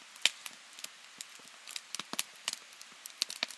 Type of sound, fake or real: real